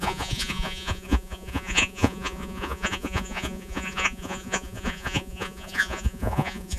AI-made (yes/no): yes